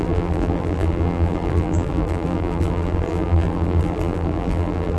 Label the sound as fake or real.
fake